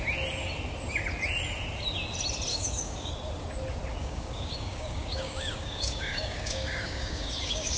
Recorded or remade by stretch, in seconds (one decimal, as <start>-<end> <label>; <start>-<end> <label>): 0.0-2.5 recorded; 2.5-3.1 remade; 3.1-4.0 recorded; 4.0-7.8 remade